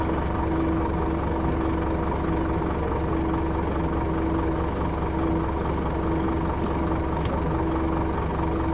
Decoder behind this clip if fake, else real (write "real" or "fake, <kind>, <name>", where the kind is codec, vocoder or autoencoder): real